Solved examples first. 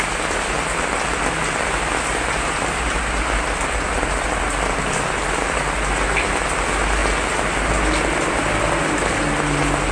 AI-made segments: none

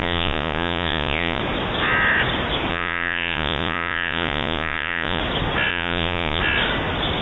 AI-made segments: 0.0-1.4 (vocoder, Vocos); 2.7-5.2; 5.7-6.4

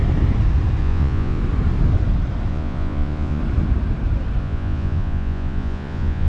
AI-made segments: 0.8-1.4 (vocoder, Vocos); 2.5-3.4; 4.4-6.3

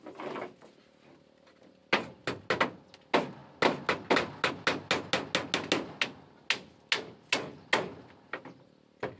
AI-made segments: none